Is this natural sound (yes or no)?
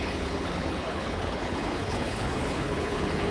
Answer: no